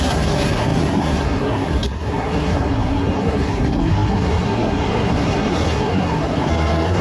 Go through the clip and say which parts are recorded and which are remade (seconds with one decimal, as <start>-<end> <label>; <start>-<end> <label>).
0.0-7.0 remade